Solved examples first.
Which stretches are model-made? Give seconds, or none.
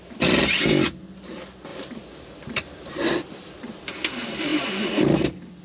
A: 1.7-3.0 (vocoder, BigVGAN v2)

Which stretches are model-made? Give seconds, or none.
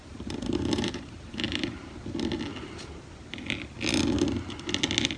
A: 0.0-1.9 (vocoder, BigVGAN v2)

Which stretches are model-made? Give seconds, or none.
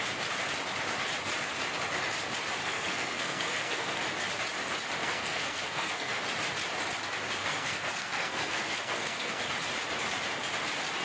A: 2.6-4.0 (codec, SNAC); 5.0-6.2; 7.4-9.4